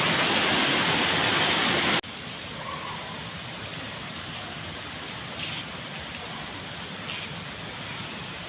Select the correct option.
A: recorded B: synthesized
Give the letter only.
A